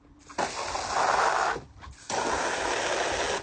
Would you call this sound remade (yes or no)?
no